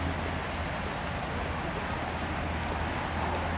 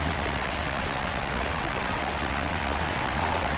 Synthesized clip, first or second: second